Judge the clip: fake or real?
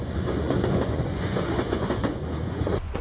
fake